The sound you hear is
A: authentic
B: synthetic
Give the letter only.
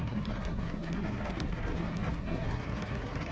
B